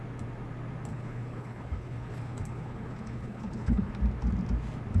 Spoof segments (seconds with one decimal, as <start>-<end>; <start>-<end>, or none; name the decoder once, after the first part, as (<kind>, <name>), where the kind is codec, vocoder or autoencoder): 0.9-3.9 (codec, HILCodec)